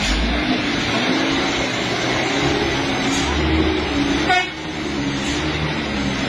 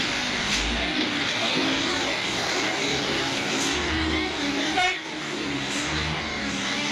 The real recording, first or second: first